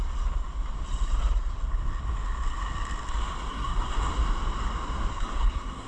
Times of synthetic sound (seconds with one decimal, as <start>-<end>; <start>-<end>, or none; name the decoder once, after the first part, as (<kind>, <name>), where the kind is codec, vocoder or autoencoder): 3.5-4.1 (codec, SNAC); 5.1-5.9